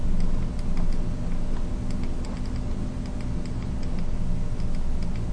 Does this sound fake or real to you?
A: real